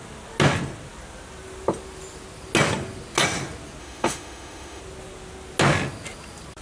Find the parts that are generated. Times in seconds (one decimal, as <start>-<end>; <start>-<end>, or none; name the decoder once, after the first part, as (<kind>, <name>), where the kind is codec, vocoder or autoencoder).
3.8-4.8 (autoencoder, DAC-VAE)